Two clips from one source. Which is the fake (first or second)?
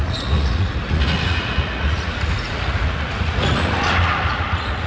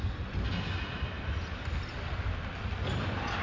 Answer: first